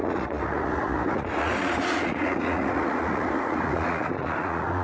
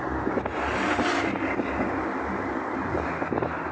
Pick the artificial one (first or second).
first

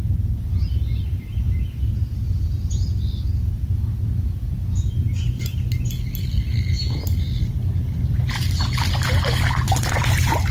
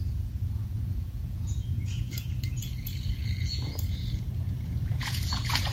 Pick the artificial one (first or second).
second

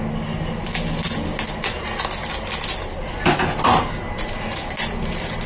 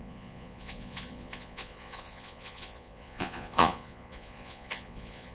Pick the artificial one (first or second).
second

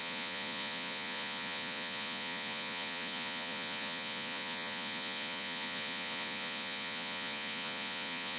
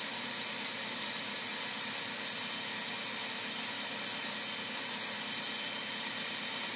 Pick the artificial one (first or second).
first